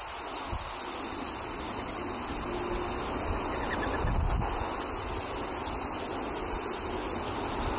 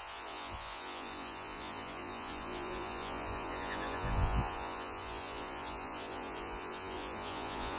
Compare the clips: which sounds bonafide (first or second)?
first